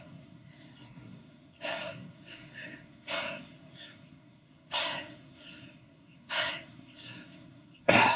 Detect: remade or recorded remade